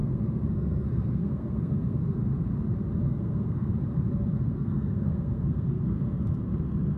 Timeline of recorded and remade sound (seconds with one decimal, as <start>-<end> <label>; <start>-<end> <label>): 0.0-2.2 remade; 2.2-3.0 recorded; 3.0-3.7 remade; 3.7-4.4 recorded; 4.4-6.4 remade; 6.4-7.0 recorded